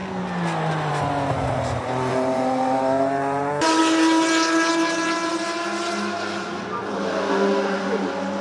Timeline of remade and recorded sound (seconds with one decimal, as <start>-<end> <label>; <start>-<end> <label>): 0.0-2.1 recorded; 2.1-3.8 remade; 3.8-8.4 recorded